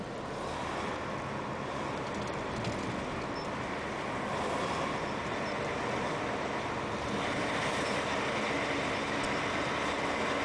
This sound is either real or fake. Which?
real